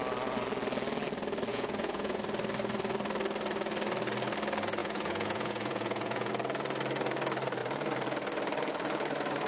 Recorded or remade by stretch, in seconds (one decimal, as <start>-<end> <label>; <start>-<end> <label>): 0.0-1.5 recorded; 1.5-2.2 remade; 2.2-4.8 recorded; 4.8-6.3 remade; 6.3-9.5 recorded

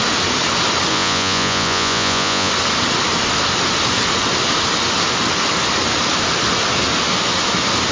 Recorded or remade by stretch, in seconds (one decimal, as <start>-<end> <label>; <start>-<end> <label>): 0.0-0.9 recorded; 0.9-2.5 remade; 2.5-7.9 recorded

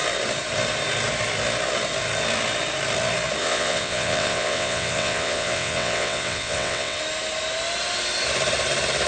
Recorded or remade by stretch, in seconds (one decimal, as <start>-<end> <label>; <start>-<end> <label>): 0.0-3.4 recorded; 3.4-7.0 remade; 7.0-9.1 recorded

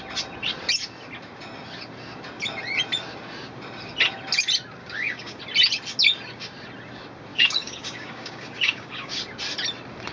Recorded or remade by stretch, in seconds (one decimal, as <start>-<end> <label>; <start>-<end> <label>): 0.0-4.8 recorded; 4.8-5.4 remade; 5.4-7.3 recorded; 7.3-9.2 remade; 9.2-10.1 recorded

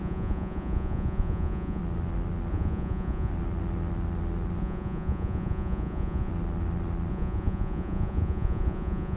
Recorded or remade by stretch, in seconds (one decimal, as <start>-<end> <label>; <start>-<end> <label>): 0.0-1.8 remade; 1.8-2.5 recorded; 2.5-3.3 remade; 3.3-4.6 recorded; 4.6-6.3 remade; 6.3-7.1 recorded; 7.1-9.2 remade